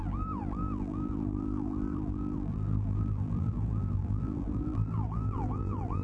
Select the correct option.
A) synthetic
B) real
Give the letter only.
A